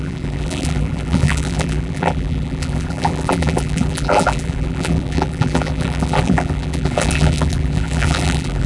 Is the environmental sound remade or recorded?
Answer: remade